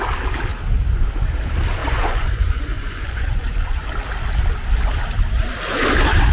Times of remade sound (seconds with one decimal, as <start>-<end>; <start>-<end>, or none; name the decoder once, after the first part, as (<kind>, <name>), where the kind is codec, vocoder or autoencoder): 1.8-3.8 (vocoder, Vocos)